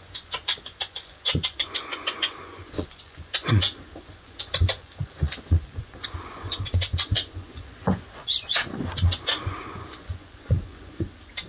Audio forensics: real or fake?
fake